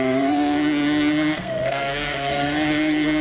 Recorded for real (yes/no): no